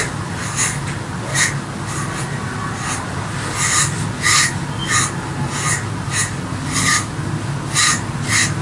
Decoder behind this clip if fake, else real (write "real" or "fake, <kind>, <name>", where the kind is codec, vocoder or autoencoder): real